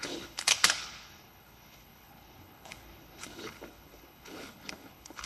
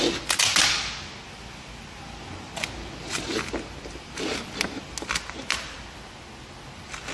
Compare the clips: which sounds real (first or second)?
second